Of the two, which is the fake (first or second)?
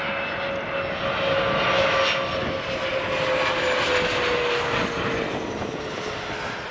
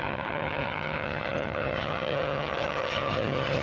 second